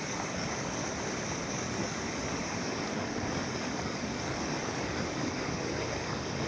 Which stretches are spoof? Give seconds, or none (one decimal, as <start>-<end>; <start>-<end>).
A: 0.0-0.8; 1.5-6.5